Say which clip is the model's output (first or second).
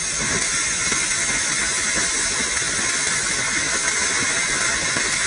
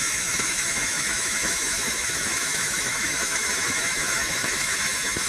second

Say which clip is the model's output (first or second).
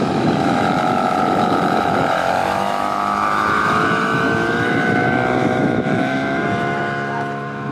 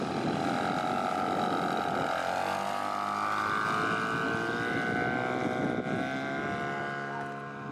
first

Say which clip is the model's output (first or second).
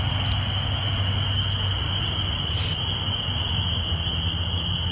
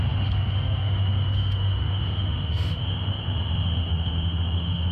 second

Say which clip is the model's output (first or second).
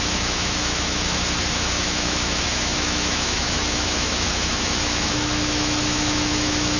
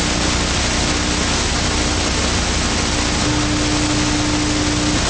first